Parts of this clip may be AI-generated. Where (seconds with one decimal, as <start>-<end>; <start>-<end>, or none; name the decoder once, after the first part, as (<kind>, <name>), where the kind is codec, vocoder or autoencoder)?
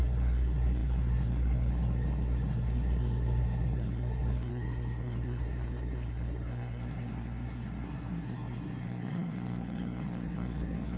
0.0-11.0 (codec, SNAC)